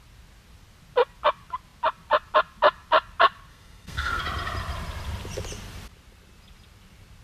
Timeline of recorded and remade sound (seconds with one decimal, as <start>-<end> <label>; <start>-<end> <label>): 0.0-3.5 recorded; 3.5-4.2 remade; 4.2-7.2 recorded